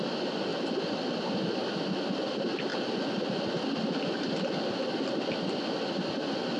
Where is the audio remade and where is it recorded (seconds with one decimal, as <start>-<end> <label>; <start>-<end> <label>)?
0.0-6.6 recorded